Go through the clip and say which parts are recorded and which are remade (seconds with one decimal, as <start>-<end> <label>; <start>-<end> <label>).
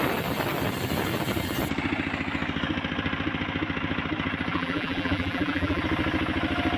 0.0-4.5 recorded; 4.5-5.8 remade; 5.8-6.8 recorded